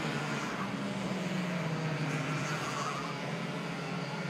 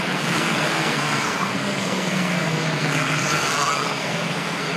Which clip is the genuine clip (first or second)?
first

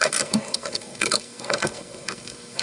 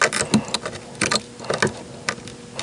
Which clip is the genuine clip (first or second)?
second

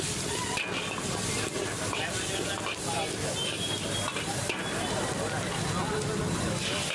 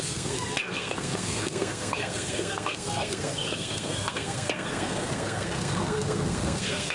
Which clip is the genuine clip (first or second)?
first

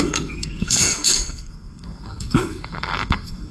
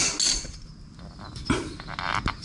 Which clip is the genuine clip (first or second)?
second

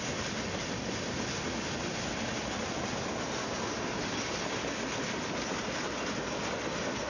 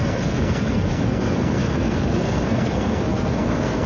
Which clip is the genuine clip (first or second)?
first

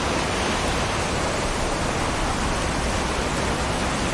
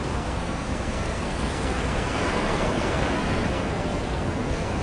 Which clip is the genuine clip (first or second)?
first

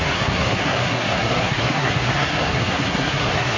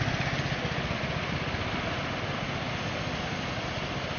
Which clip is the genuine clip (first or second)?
second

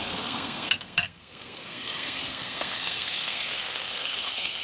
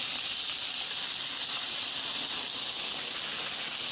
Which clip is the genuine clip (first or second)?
second